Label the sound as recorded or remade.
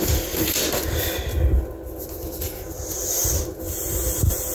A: recorded